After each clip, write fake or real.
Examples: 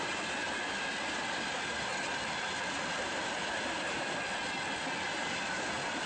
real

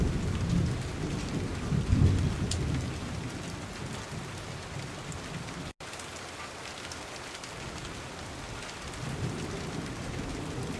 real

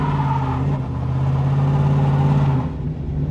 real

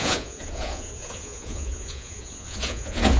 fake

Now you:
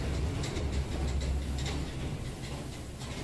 real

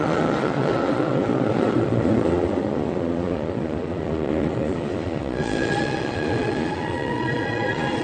fake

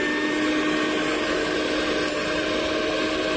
real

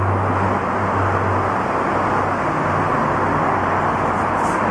real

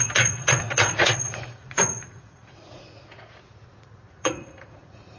fake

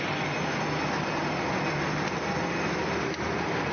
real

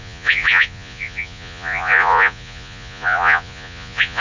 fake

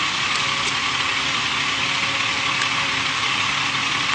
real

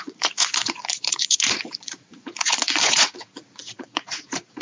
fake